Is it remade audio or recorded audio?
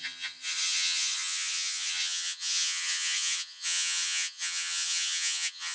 remade